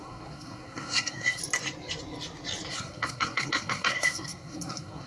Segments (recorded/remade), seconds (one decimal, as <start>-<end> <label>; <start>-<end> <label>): 0.0-1.4 remade; 1.4-2.7 recorded; 2.7-5.1 remade